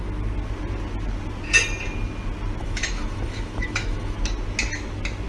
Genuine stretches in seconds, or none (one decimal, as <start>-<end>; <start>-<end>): 0.0-2.6; 4.2-5.3